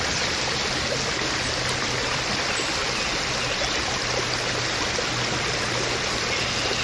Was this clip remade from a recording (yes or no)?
no